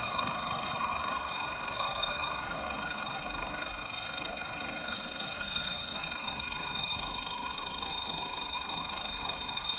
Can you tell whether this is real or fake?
fake